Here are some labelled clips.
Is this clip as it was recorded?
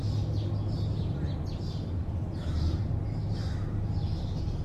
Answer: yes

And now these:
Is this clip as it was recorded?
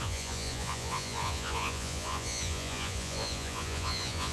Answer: no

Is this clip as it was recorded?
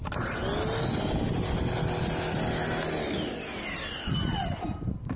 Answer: yes